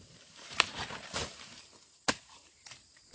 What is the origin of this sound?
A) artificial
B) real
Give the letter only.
A